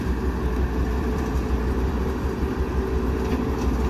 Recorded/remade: recorded